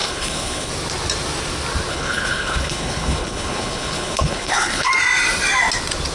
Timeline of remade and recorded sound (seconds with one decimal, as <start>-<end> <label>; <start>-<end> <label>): 0.0-0.7 remade; 0.7-1.9 recorded; 1.9-4.9 remade; 4.9-6.1 recorded